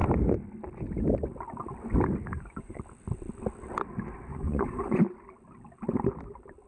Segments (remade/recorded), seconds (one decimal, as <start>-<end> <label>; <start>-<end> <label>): 0.0-2.3 recorded; 2.3-2.8 remade; 2.8-4.3 recorded; 4.3-5.0 remade; 5.0-6.7 recorded